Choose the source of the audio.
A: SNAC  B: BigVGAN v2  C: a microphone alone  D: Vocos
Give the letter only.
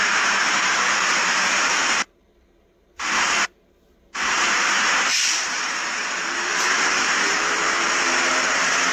B